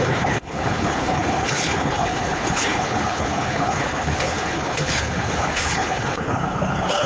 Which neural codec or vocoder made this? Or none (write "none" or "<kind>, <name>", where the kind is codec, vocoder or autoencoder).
codec, HILCodec